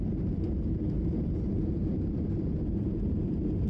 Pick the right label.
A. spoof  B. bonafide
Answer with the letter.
A